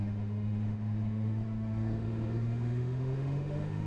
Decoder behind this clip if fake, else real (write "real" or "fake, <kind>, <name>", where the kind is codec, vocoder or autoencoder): fake, autoencoder, DAC-VAE